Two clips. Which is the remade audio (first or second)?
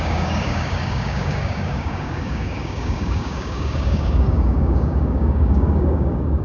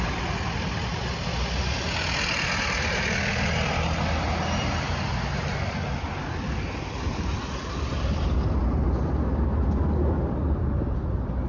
first